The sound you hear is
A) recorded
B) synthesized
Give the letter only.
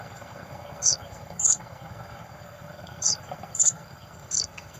B